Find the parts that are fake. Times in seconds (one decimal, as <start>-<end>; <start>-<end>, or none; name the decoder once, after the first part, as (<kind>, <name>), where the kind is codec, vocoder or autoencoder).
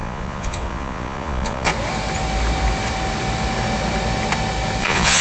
0.0-1.7 (vocoder, Vocos); 4.8-5.2